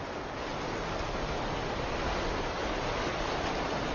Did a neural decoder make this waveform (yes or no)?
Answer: no